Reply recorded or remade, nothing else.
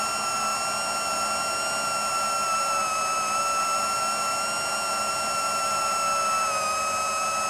recorded